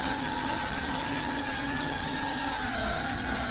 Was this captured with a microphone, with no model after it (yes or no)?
no